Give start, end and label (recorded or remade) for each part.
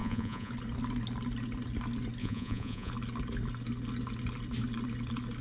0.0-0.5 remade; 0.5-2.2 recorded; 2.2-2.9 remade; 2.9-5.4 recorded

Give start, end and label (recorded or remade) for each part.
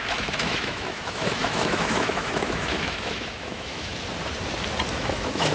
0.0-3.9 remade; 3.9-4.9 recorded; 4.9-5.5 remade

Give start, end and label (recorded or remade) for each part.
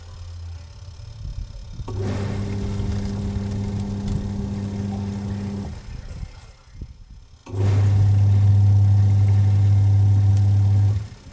0.0-11.3 recorded